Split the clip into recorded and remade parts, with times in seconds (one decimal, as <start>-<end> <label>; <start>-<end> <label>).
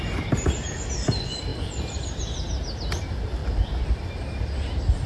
0.0-5.1 recorded